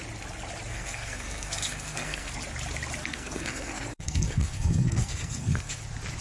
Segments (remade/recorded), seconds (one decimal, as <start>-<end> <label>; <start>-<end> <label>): 0.0-0.7 recorded; 0.7-2.3 remade; 2.3-3.0 recorded; 3.0-5.8 remade; 5.8-6.2 recorded